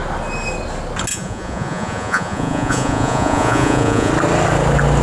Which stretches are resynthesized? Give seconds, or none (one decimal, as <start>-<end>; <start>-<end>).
1.1-4.1